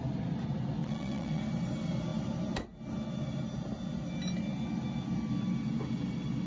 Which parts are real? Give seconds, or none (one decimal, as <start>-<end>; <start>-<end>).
0.0-0.8; 1.4-6.5